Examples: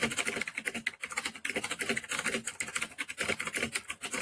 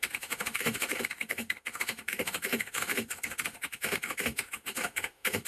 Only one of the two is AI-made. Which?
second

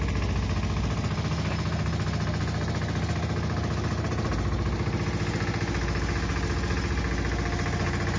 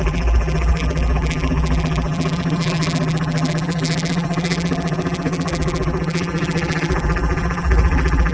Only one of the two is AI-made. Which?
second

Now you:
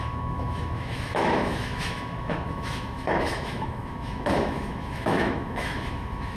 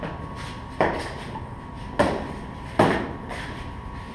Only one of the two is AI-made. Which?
first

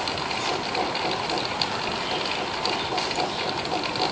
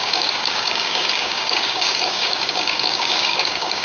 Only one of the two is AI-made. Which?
second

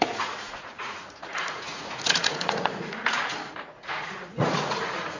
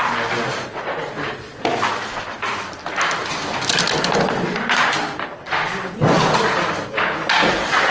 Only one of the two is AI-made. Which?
first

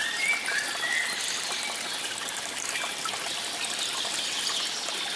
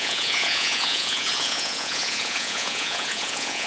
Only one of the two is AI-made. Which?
second